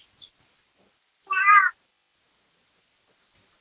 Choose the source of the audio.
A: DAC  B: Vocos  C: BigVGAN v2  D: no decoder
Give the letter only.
D